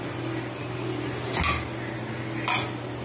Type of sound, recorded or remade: recorded